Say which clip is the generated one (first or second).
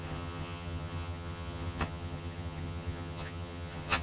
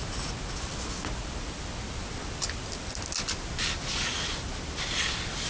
first